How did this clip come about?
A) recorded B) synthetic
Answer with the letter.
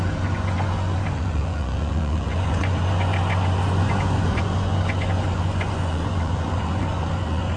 B